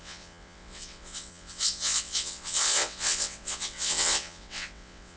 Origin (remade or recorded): remade